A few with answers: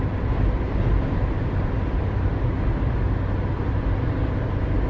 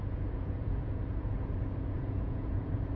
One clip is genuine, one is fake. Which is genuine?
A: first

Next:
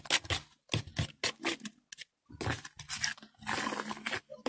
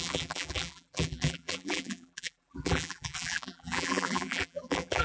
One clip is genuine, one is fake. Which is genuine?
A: first